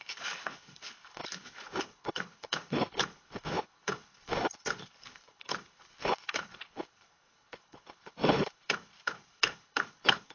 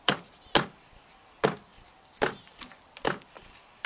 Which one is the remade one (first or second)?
first